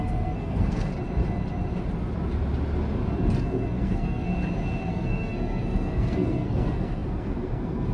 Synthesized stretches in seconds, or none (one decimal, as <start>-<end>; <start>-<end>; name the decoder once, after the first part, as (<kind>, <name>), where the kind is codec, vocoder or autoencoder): 0.0-0.9 (codec, SNAC); 3.4-4.3; 4.9-7.9